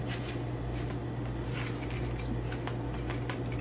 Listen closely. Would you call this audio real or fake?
real